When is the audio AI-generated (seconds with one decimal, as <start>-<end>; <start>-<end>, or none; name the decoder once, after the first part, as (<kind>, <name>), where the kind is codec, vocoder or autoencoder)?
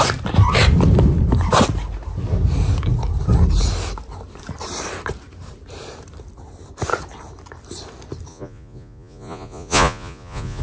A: 8.3-10.6 (vocoder, Vocos)